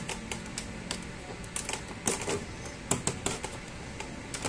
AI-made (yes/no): no